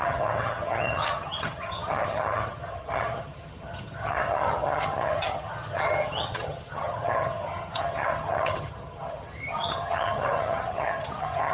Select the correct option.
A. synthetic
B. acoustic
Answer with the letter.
A